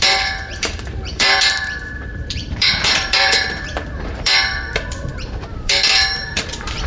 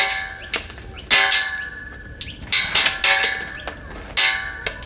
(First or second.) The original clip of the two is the second